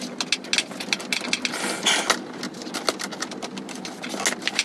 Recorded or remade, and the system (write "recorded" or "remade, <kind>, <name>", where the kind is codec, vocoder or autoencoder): recorded